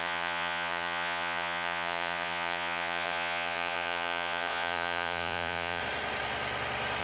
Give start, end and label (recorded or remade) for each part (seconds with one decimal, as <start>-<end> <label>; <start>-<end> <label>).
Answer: 0.0-5.8 remade; 5.8-7.0 recorded